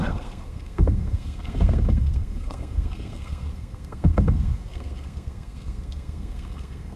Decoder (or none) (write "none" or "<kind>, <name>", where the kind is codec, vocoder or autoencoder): codec, SNAC